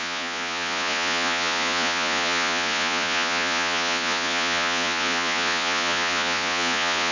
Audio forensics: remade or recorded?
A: remade